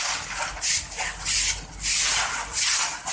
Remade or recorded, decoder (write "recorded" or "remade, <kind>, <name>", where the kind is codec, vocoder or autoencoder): recorded